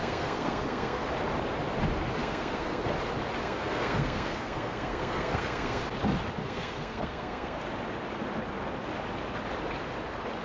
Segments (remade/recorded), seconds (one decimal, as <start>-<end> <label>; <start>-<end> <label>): 0.0-1.1 remade; 1.1-2.2 recorded; 2.2-2.8 remade; 2.8-3.4 recorded; 3.4-5.8 remade; 5.8-6.4 recorded; 6.4-7.6 remade; 7.6-10.4 recorded